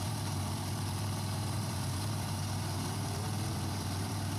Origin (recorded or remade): remade